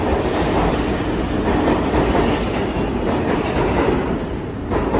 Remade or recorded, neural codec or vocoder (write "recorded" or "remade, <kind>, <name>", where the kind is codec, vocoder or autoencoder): recorded